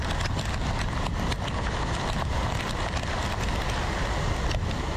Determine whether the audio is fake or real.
real